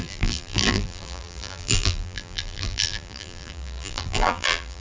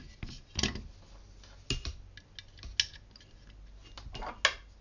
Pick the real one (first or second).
second